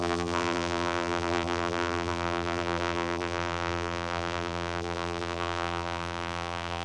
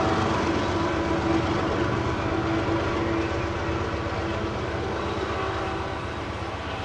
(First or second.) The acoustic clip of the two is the second